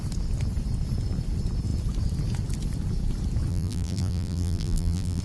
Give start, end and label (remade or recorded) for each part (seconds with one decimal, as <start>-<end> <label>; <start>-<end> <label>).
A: 0.0-3.5 recorded; 3.5-5.2 remade